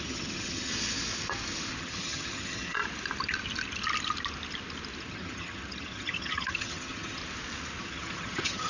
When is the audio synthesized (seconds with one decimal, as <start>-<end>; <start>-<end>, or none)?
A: 0.0-0.7; 1.8-2.8; 5.0-7.2; 7.8-8.7

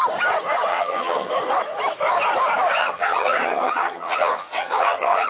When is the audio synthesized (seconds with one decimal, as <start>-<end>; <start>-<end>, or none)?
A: 0.7-1.3; 2.8-5.3